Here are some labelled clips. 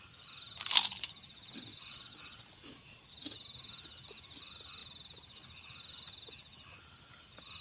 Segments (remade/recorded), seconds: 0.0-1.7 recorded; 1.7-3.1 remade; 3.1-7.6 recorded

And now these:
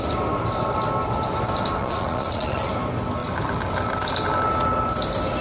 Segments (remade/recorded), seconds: 0.0-1.8 recorded; 1.8-2.7 remade; 2.7-5.4 recorded

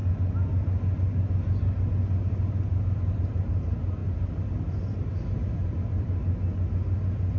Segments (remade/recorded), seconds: 0.0-7.4 recorded